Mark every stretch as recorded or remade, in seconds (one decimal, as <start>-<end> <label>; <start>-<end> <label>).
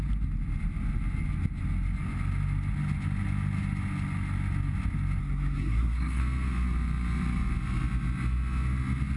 0.0-5.2 recorded; 5.2-6.2 remade; 6.2-9.2 recorded